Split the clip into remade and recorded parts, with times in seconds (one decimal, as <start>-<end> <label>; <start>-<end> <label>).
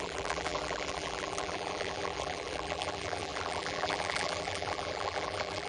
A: 0.0-5.7 remade